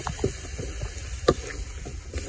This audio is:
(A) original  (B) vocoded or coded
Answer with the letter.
A